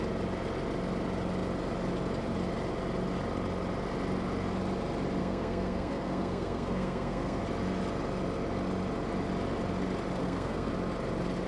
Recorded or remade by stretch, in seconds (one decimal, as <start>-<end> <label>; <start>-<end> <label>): 0.0-5.2 recorded; 5.2-7.4 remade; 7.4-10.2 recorded; 10.2-10.7 remade; 10.7-11.5 recorded